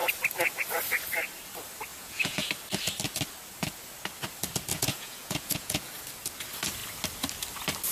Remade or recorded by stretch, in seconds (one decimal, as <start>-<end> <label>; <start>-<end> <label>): 0.0-1.9 recorded; 1.9-2.5 remade; 2.5-4.7 recorded; 4.7-5.9 remade; 5.9-7.9 recorded